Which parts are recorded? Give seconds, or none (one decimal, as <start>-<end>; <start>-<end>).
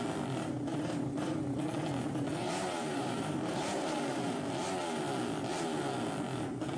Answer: 0.0-0.7; 1.3-2.4; 4.2-6.8